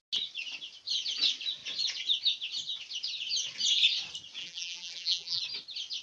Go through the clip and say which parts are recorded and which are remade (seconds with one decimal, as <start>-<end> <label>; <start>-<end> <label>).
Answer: 0.0-4.4 recorded; 4.4-5.4 remade; 5.4-6.0 recorded